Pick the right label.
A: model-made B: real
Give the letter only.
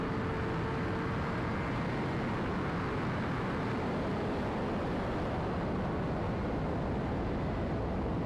B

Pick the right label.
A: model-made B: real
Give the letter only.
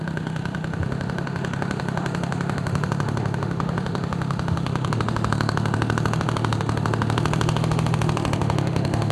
A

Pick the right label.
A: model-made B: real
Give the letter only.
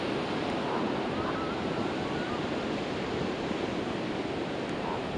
B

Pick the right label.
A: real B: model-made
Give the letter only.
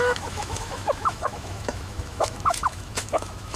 B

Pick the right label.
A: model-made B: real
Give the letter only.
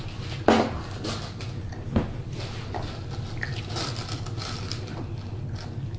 B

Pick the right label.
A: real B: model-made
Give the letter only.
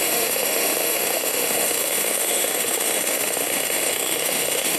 B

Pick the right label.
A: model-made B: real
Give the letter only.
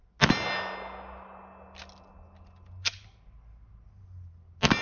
B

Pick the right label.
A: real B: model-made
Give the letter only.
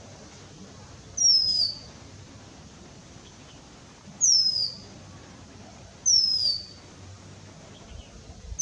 A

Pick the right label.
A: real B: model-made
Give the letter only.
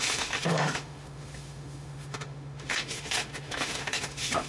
B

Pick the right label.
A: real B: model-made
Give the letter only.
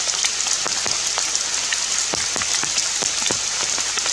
A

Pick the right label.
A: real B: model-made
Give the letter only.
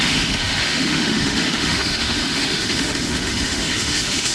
B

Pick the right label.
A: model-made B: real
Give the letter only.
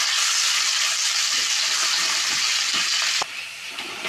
B